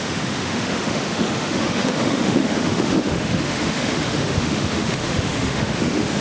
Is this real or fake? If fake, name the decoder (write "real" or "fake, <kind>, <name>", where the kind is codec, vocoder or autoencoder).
fake, autoencoder, DAC-VAE